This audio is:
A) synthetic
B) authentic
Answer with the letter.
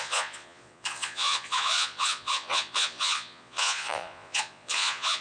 A